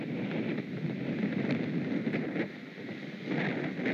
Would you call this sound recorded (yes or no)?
yes